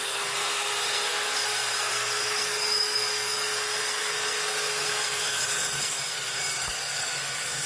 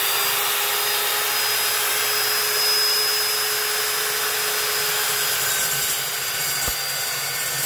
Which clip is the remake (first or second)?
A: first